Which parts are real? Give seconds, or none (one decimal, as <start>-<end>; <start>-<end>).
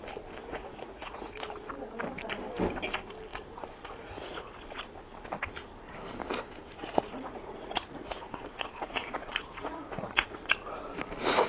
0.0-0.4; 1.3-3.3; 4.8-6.8; 10.4-11.5